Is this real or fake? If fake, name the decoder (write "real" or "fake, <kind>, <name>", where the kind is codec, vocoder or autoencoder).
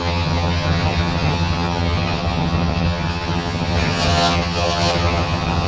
fake, vocoder, HiFi-GAN